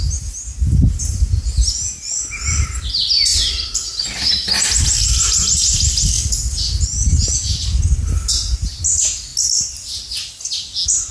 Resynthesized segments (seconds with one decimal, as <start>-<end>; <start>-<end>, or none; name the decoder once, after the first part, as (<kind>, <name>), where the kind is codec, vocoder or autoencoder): none